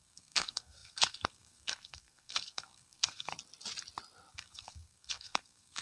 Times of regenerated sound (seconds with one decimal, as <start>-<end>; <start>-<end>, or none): 0.0-3.3; 4.3-5.8